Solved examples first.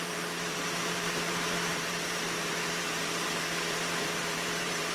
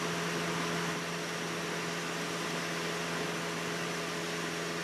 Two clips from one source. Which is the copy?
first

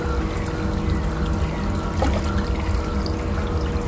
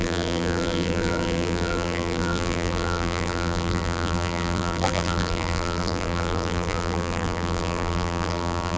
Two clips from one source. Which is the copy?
second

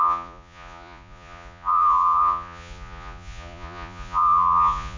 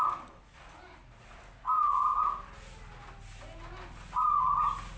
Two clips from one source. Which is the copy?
first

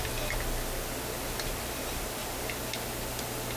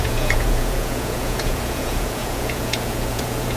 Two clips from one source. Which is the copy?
second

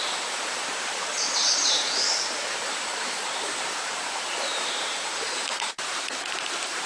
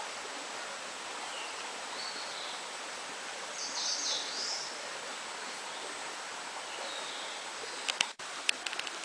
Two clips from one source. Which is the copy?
first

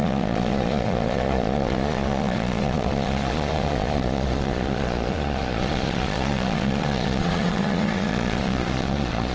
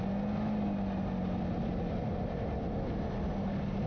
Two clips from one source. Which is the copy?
first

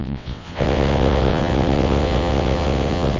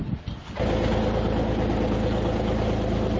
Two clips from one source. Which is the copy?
first